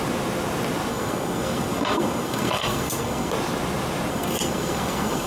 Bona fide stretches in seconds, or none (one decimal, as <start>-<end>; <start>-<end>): 0.0-0.9; 3.3-4.1